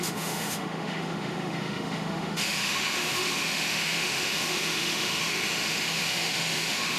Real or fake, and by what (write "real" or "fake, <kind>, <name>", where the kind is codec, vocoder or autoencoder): fake, autoencoder, DAC-VAE